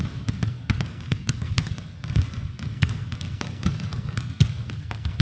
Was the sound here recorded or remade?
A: remade